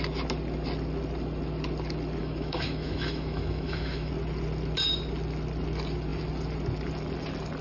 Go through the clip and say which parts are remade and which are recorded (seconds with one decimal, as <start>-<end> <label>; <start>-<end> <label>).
0.0-2.2 recorded; 2.2-4.1 remade; 4.1-7.6 recorded